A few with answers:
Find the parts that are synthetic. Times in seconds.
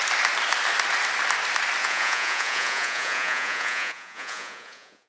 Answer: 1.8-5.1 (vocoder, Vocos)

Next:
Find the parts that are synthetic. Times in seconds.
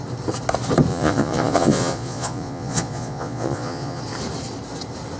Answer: 0.9-4.0 (vocoder, Vocos)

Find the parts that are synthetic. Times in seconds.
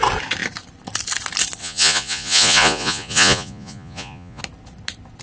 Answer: 1.6-4.4 (vocoder, Vocos)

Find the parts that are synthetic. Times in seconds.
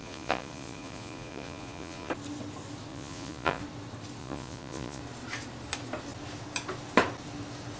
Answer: 0.0-2.1 (vocoder, Vocos); 2.9-3.6; 4.2-5.0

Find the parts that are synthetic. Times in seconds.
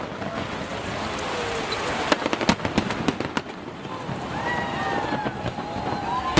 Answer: none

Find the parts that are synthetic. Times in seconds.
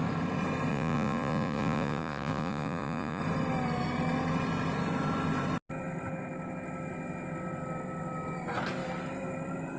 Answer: 0.7-3.2 (vocoder, Vocos)